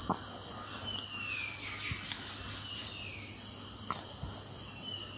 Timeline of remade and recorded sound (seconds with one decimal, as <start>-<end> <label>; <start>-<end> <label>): 0.0-5.2 recorded